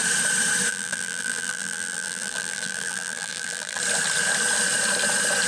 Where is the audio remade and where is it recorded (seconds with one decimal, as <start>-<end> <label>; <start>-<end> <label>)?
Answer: 0.0-0.7 recorded; 0.7-3.8 remade; 3.8-5.5 recorded